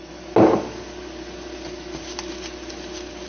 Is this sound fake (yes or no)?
no